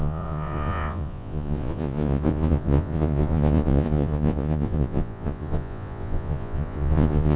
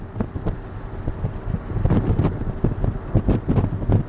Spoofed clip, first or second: first